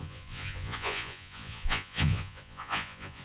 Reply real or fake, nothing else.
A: fake